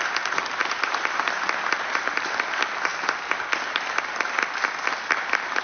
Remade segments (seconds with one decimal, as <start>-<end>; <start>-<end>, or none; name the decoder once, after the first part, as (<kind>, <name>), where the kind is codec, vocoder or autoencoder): 0.6-1.4 (vocoder, BigVGAN v2)